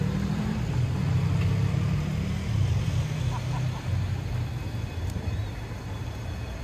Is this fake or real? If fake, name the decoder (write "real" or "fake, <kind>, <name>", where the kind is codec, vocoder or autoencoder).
real